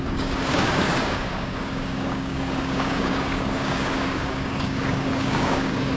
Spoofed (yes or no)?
yes